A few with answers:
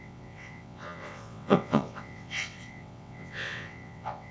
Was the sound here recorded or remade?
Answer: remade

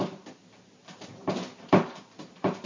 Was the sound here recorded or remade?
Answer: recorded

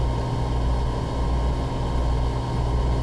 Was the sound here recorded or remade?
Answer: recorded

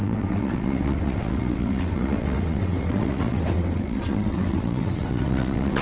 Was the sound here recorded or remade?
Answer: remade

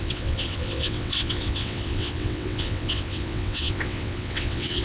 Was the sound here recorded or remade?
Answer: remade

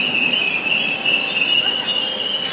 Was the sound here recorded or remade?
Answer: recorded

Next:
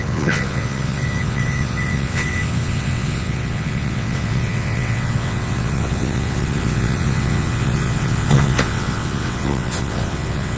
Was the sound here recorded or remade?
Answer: remade